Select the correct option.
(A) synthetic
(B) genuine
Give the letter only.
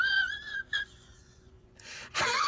A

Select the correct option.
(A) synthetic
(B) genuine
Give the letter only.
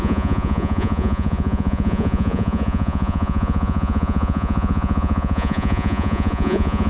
A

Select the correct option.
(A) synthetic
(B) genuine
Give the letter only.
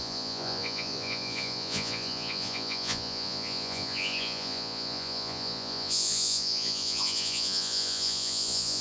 A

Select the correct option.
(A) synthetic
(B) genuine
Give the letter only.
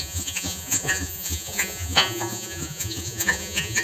A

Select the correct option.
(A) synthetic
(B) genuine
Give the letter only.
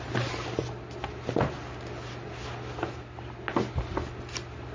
B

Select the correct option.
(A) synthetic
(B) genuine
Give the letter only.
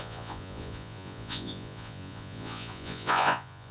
A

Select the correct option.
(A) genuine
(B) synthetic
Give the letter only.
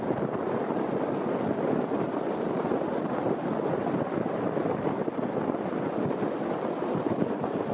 A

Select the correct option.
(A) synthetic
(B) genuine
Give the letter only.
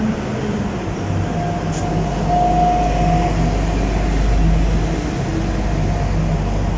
B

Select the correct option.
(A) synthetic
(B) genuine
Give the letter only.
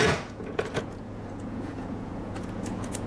A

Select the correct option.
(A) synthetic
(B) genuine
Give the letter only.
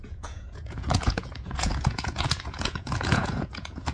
A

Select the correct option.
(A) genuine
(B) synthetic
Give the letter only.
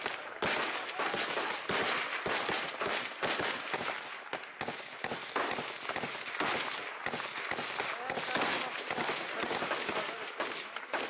A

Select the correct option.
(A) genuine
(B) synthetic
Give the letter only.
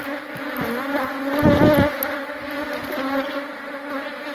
A